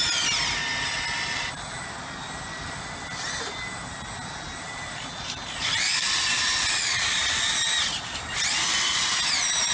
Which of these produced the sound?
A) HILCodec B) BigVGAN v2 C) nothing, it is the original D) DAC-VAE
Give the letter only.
C